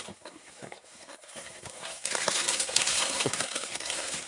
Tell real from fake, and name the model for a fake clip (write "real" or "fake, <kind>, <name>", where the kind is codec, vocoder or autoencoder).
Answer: fake, codec, SNAC